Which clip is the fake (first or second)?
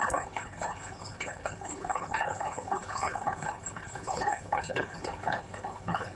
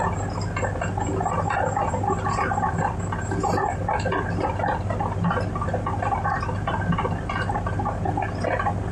first